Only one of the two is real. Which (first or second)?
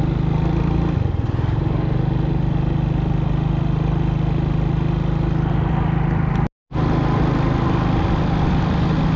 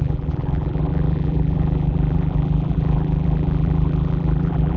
first